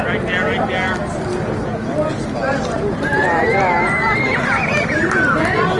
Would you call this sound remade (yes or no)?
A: no